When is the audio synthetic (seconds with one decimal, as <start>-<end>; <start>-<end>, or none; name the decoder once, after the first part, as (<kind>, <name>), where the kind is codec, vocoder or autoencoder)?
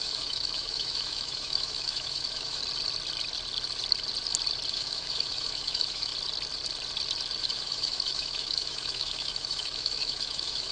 0.0-2.6 (autoencoder, DAC-VAE); 4.7-6.1; 7.4-10.7